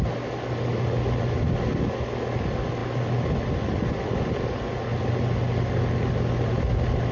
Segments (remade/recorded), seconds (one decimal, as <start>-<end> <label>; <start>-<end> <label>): 0.0-7.1 recorded